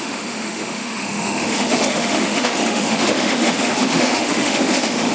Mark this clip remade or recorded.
remade